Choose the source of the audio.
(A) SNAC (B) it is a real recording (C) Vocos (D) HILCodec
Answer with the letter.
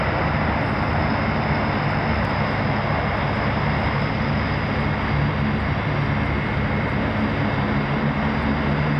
B